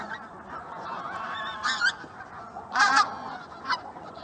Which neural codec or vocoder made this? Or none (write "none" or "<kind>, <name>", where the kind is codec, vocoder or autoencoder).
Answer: vocoder, Vocos